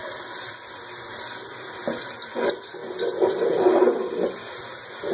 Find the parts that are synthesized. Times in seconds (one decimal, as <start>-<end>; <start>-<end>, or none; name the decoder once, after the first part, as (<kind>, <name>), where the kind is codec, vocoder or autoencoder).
none